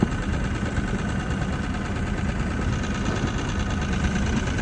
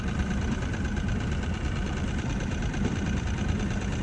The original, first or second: first